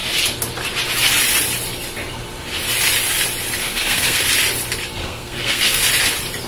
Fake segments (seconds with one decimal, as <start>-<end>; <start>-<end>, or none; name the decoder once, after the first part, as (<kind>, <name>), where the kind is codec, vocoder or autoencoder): 3.6-4.2 (codec, SNAC); 5.0-5.8